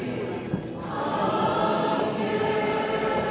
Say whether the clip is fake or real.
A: real